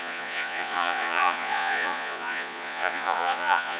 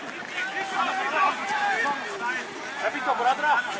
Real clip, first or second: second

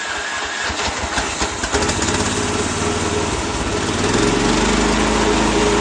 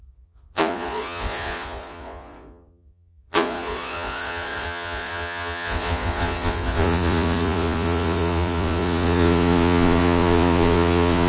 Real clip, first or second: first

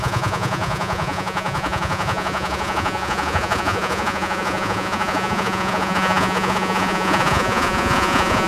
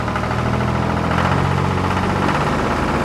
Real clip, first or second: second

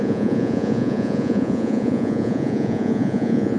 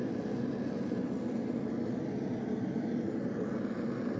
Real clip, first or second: second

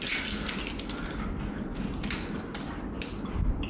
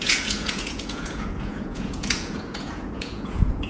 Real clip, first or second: first